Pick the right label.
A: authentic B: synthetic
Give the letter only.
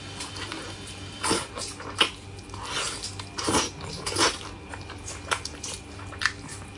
A